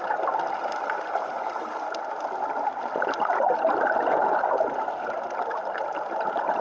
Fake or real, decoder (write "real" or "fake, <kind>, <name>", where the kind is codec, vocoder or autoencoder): real